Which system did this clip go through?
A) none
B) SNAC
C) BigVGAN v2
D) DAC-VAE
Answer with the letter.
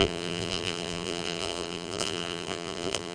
C